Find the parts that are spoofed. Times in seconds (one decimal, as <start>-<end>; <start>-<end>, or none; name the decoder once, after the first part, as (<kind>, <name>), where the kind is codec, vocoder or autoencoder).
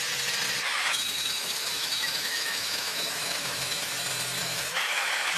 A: 0.7-3.9 (autoencoder, DAC-VAE); 4.4-5.4